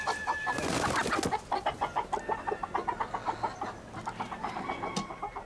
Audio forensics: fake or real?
real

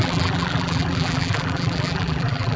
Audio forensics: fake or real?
fake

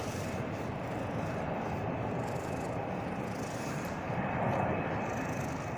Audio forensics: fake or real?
fake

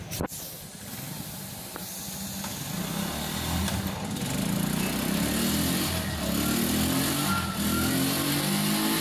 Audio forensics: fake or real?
real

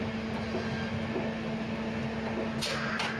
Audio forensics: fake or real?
real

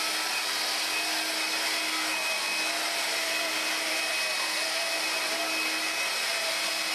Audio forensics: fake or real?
real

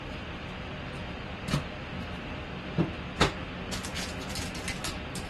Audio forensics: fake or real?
real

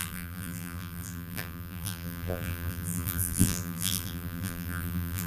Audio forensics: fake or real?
fake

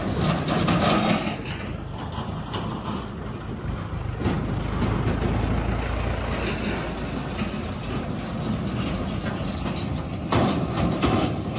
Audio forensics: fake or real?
real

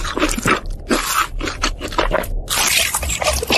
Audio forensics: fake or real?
real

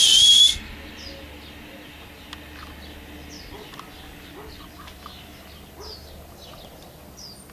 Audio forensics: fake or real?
real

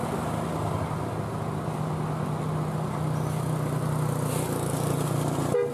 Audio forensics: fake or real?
real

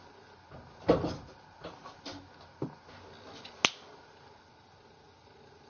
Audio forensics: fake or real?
real